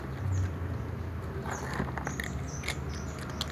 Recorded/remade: recorded